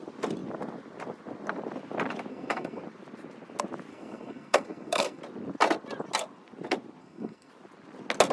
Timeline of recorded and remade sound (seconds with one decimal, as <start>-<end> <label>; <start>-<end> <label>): 0.0-2.3 recorded; 2.3-2.8 remade; 2.8-3.9 recorded; 3.9-5.2 remade; 5.2-7.0 recorded; 7.0-7.5 remade; 7.5-8.3 recorded